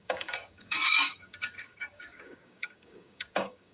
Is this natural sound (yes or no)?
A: no